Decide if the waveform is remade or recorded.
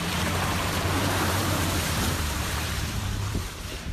remade